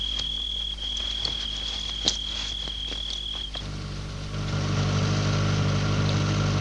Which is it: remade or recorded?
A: recorded